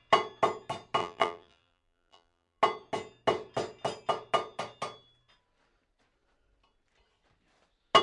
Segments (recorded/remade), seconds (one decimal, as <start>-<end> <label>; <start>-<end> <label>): 0.0-1.0 recorded; 1.0-2.6 remade; 2.6-8.0 recorded